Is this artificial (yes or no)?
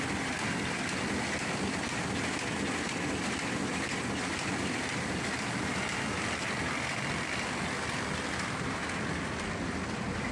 no